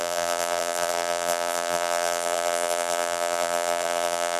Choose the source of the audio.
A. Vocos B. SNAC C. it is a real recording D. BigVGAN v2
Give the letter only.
D